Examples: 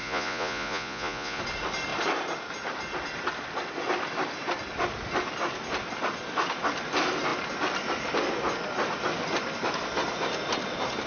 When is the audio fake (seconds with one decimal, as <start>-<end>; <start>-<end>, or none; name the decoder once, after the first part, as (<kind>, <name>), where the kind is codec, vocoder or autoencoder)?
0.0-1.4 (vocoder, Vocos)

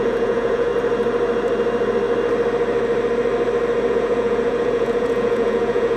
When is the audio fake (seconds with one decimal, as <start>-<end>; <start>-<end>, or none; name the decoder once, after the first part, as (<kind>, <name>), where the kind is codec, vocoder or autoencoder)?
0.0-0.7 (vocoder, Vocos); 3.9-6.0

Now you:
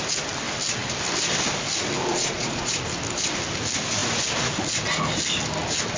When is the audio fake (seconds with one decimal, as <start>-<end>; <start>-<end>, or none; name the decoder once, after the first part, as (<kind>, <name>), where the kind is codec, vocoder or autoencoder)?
2.1-2.7 (vocoder, Vocos)

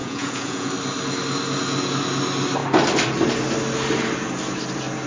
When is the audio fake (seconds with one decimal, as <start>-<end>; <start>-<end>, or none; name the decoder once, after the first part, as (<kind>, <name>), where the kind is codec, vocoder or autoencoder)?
0.0-0.7 (vocoder, Vocos)